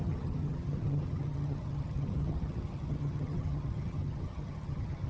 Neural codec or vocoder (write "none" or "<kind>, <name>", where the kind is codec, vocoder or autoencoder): vocoder, HiFi-GAN